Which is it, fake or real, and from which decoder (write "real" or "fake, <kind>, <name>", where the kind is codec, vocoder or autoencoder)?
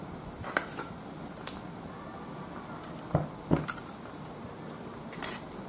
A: fake, vocoder, BigVGAN v2